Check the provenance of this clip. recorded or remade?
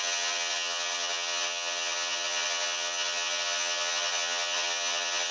remade